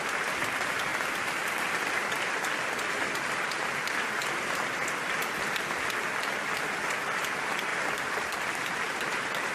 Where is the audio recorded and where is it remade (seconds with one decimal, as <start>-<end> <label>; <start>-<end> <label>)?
0.0-7.7 recorded; 7.7-9.5 remade